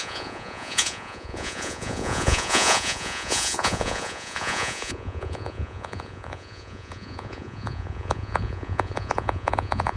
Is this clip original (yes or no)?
no